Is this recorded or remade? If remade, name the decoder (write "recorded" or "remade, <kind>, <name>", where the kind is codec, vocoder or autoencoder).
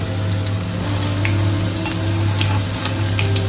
recorded